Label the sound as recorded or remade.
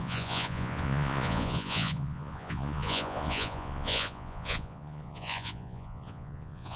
remade